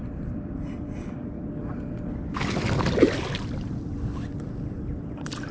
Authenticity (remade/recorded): recorded